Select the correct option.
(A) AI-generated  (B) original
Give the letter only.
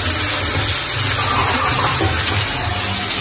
B